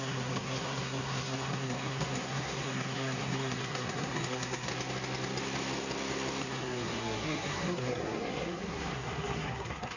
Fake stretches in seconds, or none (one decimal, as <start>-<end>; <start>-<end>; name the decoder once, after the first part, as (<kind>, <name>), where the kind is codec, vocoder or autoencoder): 0.0-4.7 (codec, SNAC); 6.4-10.0